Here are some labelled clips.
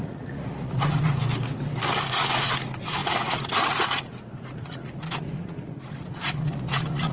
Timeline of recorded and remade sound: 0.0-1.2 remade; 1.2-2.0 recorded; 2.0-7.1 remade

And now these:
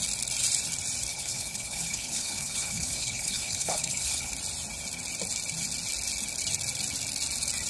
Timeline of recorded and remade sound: 0.0-1.1 recorded; 1.1-4.3 remade; 4.3-7.7 recorded

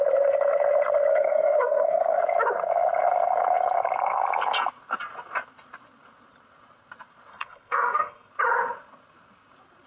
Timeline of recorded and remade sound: 0.0-1.1 recorded; 1.1-2.2 remade; 2.2-7.3 recorded; 7.3-8.3 remade; 8.3-9.9 recorded

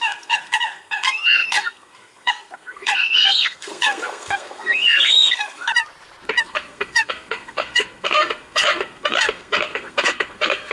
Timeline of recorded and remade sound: 0.0-5.7 remade; 5.7-6.4 recorded; 6.4-10.7 remade

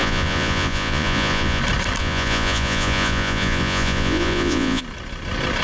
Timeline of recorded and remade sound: 0.0-1.6 remade; 1.6-2.0 recorded; 2.0-4.8 remade; 4.8-5.6 recorded

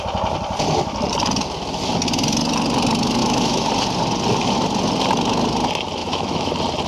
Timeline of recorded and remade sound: 0.0-3.2 recorded; 3.2-3.7 remade; 3.7-6.0 recorded; 6.0-6.5 remade; 6.5-6.9 recorded

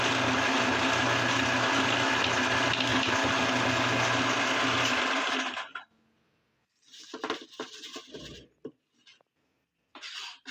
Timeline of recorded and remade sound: 0.0-10.5 recorded

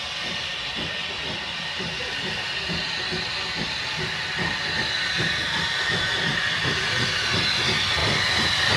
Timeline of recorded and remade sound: 0.0-8.8 recorded